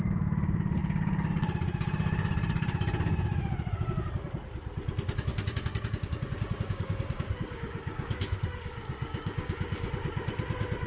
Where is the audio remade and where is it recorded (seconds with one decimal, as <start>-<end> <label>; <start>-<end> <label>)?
0.0-5.3 recorded; 5.3-9.9 remade; 9.9-10.9 recorded